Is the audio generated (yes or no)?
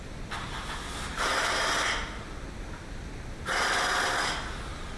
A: no